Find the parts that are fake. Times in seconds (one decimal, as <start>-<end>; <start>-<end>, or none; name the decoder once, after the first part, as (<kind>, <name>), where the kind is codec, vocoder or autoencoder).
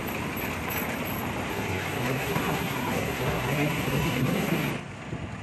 1.5-4.7 (codec, SNAC)